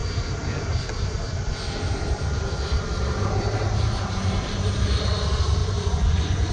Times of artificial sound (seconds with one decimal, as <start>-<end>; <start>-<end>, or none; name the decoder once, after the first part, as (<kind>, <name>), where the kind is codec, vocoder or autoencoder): 5.6-6.5 (vocoder, Vocos)